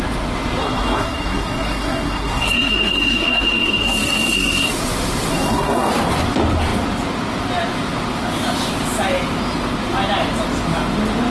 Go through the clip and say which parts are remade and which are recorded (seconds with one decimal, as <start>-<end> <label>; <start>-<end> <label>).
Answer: 0.0-0.6 recorded; 0.6-4.7 remade; 4.7-5.3 recorded; 5.3-5.9 remade; 5.9-11.3 recorded